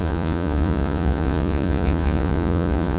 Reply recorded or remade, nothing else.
remade